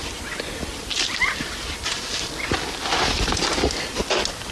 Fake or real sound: real